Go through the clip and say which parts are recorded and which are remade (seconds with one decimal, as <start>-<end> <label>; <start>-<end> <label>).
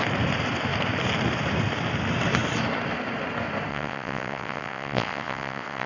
0.0-3.7 recorded; 3.7-5.9 remade